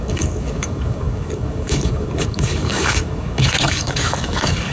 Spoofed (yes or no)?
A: yes